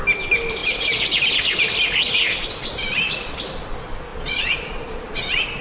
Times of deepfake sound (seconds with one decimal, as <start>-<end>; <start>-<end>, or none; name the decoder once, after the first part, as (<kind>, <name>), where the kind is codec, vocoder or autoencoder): 4.1-5.6 (vocoder, Vocos)